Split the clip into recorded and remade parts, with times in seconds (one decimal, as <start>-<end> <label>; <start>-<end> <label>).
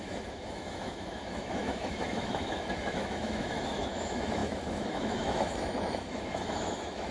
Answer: 0.0-7.1 remade